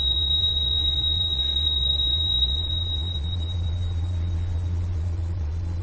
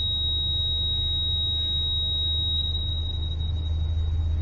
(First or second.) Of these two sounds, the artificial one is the first